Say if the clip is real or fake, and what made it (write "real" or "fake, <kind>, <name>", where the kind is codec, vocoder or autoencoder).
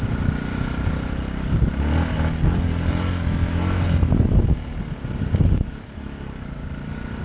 real